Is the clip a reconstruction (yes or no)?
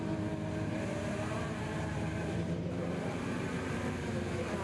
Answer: yes